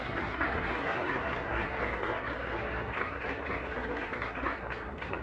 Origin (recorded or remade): remade